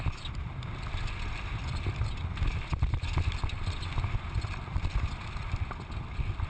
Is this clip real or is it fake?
real